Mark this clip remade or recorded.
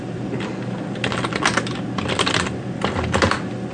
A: recorded